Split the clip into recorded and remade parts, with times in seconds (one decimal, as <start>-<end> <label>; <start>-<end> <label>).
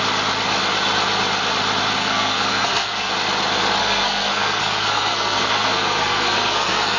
0.0-2.0 recorded; 2.0-3.1 remade; 3.1-3.8 recorded; 3.8-7.0 remade